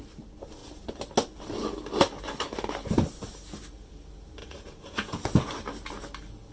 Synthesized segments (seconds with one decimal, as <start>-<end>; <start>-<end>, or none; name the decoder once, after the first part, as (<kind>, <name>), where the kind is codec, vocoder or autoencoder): 4.4-5.5 (vocoder, Vocos)